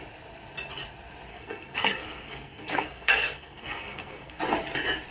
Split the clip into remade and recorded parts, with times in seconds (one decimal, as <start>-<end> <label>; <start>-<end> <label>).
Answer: 0.0-1.3 recorded; 1.3-4.4 remade; 4.4-5.1 recorded